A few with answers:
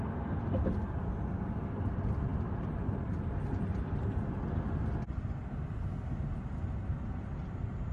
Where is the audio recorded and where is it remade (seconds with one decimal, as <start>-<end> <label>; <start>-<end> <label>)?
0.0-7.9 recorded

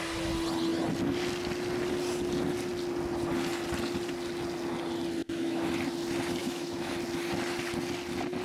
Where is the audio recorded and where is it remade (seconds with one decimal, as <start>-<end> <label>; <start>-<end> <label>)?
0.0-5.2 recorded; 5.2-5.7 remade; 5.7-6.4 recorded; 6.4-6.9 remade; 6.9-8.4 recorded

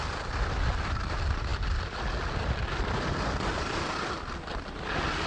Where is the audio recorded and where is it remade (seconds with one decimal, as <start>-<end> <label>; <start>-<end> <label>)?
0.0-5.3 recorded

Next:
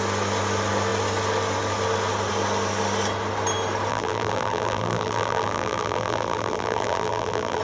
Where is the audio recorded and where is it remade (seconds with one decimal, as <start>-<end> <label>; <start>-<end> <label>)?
0.0-3.9 recorded; 3.9-7.6 remade

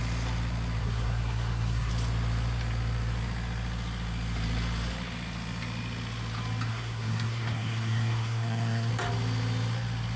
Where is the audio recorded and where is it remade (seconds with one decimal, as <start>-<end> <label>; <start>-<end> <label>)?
0.0-0.8 recorded; 0.8-1.9 remade; 1.9-6.7 recorded; 6.7-8.9 remade; 8.9-10.2 recorded

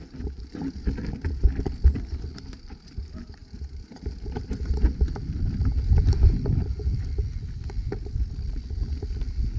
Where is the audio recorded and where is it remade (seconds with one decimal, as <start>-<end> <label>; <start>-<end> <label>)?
0.0-3.4 recorded; 3.4-4.8 remade; 4.8-9.6 recorded